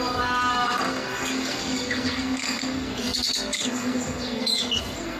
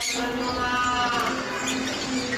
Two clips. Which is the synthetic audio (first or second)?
first